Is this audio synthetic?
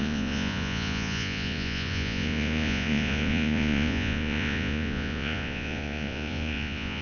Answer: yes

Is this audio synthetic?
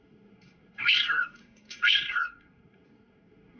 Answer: yes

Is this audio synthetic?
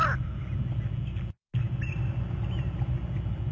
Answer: no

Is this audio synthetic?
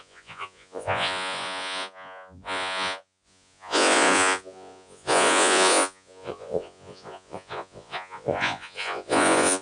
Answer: yes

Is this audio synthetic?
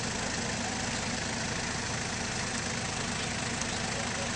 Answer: no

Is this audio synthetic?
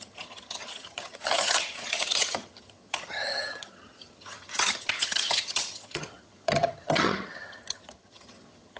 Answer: yes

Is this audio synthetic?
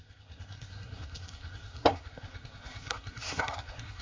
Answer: yes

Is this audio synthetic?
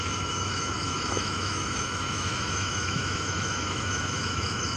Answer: yes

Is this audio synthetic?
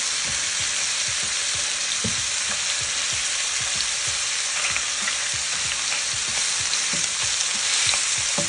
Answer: no